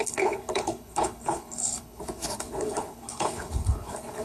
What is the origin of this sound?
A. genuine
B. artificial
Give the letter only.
B